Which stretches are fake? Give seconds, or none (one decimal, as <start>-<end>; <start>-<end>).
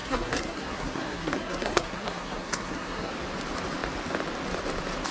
0.0-3.1